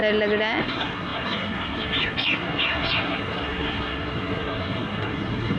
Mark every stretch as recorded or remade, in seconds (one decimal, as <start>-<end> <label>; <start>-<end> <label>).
0.0-0.6 recorded; 0.6-5.6 remade